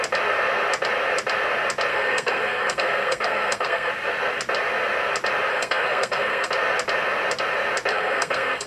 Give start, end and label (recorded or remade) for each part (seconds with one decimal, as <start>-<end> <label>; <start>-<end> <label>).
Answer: 0.0-1.9 recorded; 1.9-3.9 remade; 3.9-5.5 recorded; 5.5-6.5 remade; 6.5-7.9 recorded; 7.9-8.7 remade